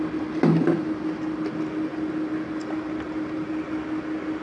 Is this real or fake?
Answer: real